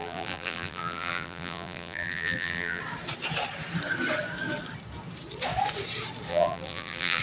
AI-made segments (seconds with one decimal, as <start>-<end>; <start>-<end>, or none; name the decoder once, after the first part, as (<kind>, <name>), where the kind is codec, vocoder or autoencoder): 0.0-2.8 (vocoder, BigVGAN v2); 6.3-7.2